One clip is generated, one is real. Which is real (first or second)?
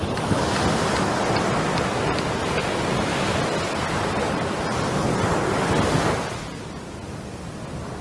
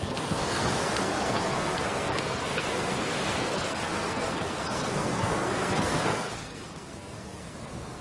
first